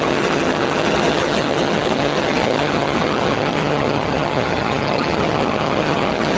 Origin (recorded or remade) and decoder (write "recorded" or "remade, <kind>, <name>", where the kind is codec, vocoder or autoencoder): remade, vocoder, HiFi-GAN